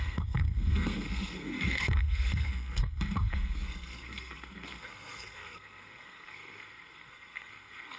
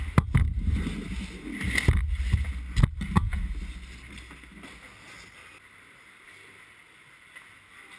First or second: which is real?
second